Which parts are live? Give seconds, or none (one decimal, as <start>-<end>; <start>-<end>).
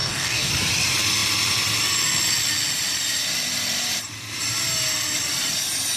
0.5-6.0